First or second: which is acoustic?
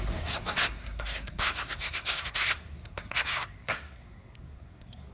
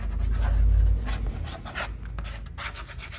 second